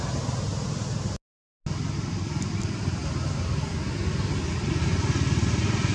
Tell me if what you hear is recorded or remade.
recorded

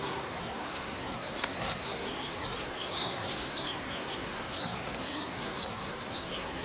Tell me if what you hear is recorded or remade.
remade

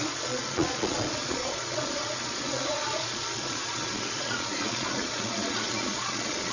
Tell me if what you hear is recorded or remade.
remade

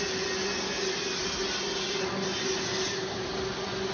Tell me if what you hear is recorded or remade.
recorded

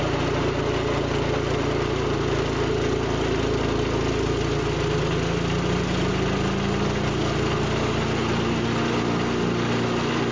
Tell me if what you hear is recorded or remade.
recorded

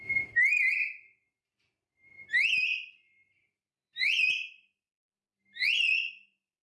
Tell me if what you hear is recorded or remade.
remade